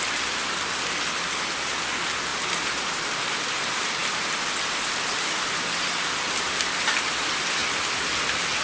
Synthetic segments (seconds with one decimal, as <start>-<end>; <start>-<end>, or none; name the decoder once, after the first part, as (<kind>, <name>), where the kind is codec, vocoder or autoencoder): none